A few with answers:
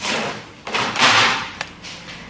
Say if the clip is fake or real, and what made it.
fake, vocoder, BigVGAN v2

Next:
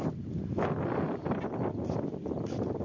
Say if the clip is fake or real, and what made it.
real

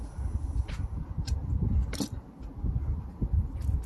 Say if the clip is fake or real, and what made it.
fake, vocoder, BigVGAN v2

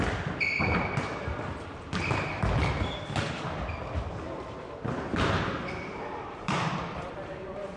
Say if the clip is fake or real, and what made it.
fake, vocoder, BigVGAN v2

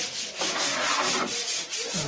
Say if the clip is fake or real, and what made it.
real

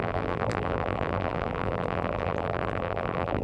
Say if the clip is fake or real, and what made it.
fake, vocoder, BigVGAN v2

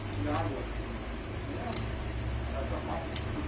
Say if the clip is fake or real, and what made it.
real